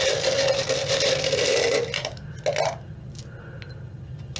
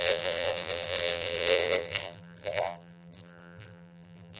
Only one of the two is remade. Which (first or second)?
second